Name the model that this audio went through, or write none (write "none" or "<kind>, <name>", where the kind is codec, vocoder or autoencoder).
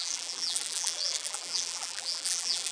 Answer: vocoder, BigVGAN v2